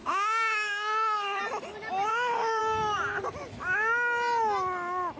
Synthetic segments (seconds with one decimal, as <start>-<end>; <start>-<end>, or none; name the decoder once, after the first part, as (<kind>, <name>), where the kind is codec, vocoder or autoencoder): 0.0-1.4 (autoencoder, DAC-VAE); 2.1-2.6